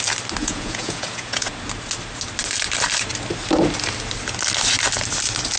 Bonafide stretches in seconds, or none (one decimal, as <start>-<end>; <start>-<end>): 0.0-0.4; 1.5-5.6